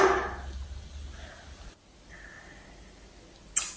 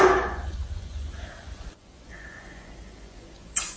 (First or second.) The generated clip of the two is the second